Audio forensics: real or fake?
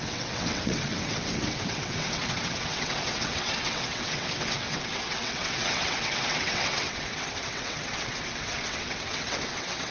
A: fake